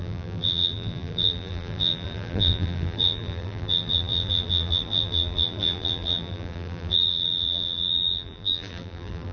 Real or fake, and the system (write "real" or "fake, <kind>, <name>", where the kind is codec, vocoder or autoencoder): fake, vocoder, BigVGAN v2